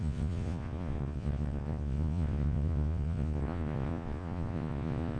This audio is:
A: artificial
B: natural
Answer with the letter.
A